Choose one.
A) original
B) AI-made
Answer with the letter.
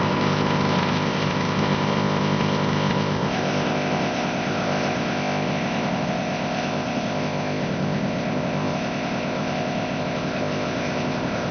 B